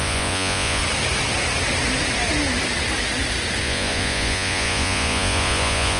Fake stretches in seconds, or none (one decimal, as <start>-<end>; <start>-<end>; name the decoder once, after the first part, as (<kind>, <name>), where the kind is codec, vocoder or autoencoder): 0.0-0.8 (vocoder, Vocos); 3.6-6.0

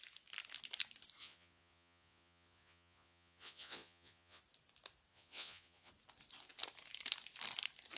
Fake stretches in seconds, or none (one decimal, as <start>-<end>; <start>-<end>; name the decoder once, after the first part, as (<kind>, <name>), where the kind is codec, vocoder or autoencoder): 1.2-4.4 (vocoder, Vocos); 5.1-5.9